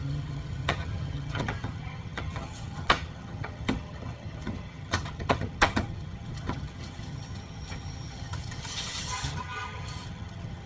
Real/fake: fake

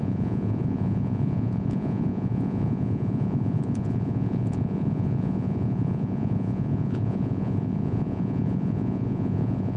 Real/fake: fake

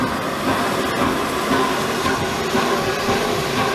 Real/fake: real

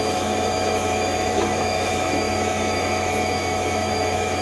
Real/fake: fake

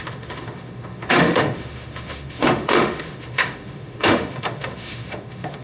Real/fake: fake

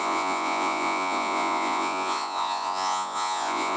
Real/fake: fake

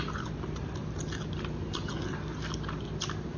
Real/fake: real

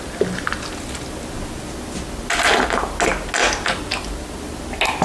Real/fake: real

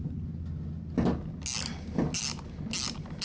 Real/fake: real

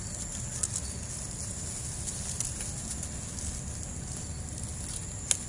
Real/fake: real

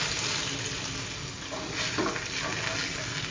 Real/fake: real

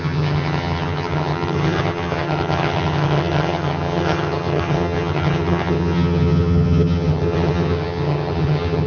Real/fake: fake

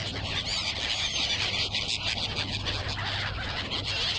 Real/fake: real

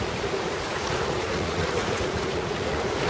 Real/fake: fake